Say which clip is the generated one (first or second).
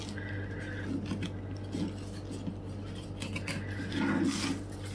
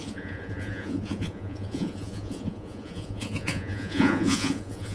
second